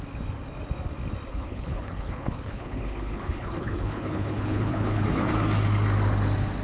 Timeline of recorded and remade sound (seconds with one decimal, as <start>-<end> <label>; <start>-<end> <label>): 0.0-1.3 recorded; 1.3-5.3 remade; 5.3-6.6 recorded